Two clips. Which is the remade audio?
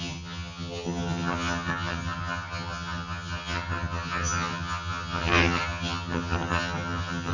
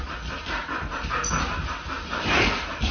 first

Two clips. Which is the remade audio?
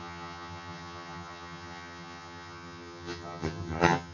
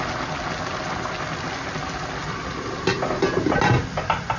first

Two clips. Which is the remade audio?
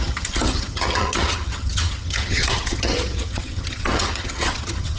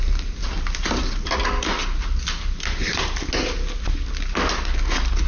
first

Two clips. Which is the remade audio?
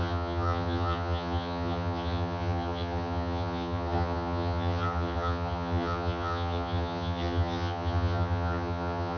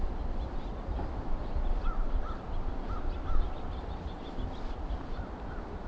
first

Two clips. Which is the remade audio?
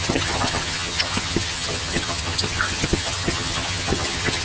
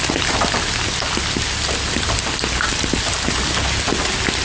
first